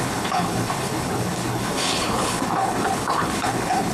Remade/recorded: remade